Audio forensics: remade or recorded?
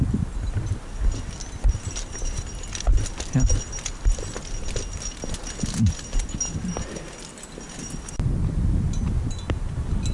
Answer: recorded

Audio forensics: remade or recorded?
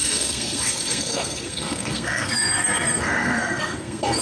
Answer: remade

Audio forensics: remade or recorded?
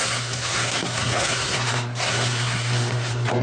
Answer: remade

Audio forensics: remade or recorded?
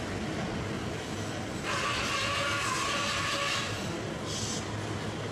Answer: recorded